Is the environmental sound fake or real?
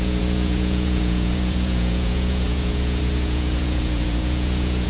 fake